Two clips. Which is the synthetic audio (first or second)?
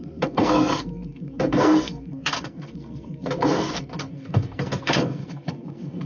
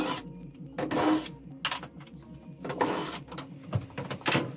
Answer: first